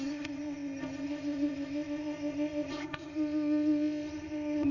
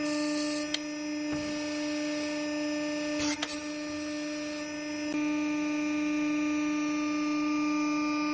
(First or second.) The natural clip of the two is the second